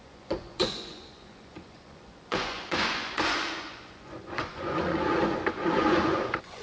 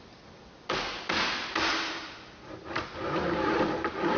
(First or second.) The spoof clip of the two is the first